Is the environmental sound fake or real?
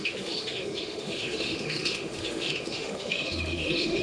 fake